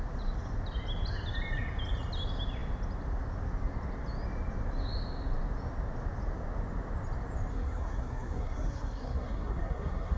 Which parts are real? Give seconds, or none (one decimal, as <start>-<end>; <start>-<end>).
0.0-7.5